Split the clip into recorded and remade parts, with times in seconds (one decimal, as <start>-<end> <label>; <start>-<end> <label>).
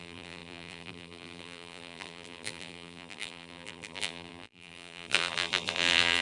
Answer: 0.0-6.2 remade